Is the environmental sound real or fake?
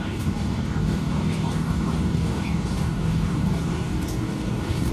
fake